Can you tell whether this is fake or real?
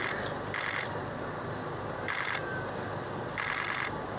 real